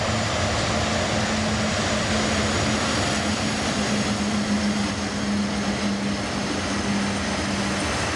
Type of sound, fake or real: real